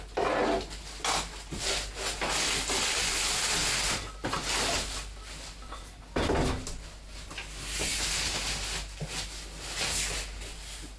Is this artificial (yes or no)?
no